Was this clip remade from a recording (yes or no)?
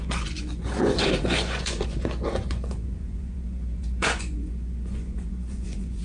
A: yes